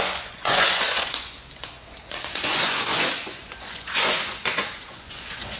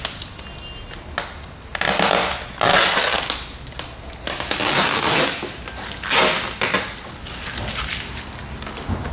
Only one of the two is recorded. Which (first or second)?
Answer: second